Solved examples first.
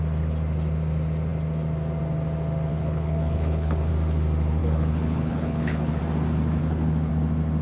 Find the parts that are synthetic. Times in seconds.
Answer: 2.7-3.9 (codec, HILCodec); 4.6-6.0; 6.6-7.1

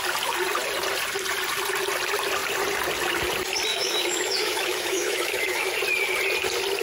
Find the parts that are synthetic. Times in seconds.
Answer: 3.7-5.7 (autoencoder, DAC-VAE)

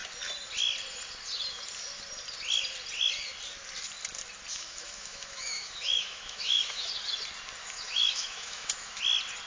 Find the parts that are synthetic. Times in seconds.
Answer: 4.5-6.9 (autoencoder, DAC-VAE); 7.6-9.0

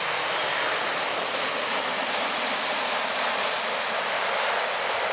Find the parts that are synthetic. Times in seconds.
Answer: none

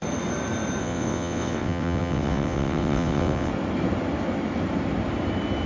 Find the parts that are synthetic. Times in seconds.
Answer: 0.8-3.5 (vocoder, WaveNeXt)